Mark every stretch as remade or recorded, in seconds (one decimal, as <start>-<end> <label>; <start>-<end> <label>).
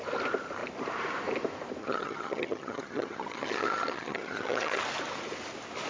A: 0.0-1.8 recorded; 1.8-4.8 remade; 4.8-5.9 recorded